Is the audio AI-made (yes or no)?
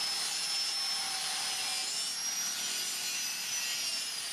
no